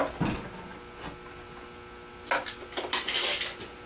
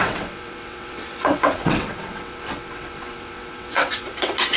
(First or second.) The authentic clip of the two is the first